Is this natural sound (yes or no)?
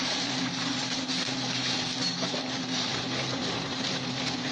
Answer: no